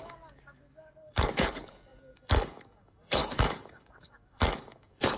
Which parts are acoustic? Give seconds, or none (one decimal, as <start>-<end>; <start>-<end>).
none